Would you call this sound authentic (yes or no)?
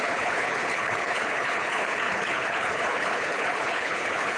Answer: no